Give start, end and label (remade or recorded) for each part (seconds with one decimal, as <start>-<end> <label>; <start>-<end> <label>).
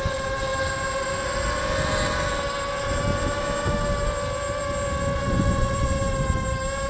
0.0-5.2 recorded; 5.2-5.9 remade; 5.9-6.9 recorded